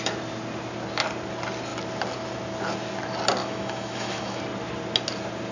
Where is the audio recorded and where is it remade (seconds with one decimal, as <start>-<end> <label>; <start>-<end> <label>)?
0.0-3.4 recorded; 3.4-4.4 remade; 4.4-5.5 recorded

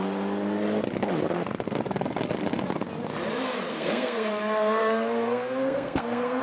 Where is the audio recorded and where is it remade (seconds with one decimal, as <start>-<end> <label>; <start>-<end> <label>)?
0.0-3.7 recorded; 3.7-6.4 remade

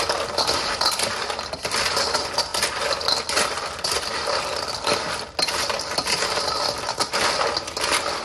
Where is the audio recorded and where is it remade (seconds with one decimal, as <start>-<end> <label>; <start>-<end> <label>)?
0.0-8.2 recorded

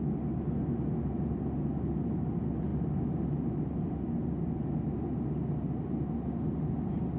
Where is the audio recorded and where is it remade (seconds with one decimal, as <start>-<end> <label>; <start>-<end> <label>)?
0.0-7.2 recorded

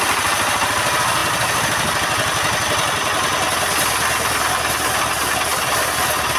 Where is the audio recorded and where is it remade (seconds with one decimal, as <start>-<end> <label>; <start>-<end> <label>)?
0.0-5.5 recorded; 5.5-6.0 remade; 6.0-6.4 recorded

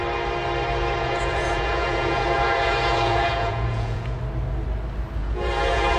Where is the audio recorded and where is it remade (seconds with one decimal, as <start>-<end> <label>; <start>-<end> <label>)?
0.0-1.0 recorded; 1.0-4.2 remade; 4.2-5.2 recorded; 5.2-6.0 remade

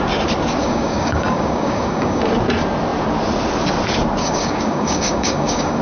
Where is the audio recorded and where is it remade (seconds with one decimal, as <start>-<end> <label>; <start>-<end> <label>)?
0.0-0.6 recorded; 0.6-2.2 remade; 2.2-4.2 recorded; 4.2-5.8 remade